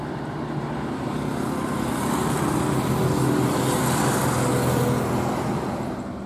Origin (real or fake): real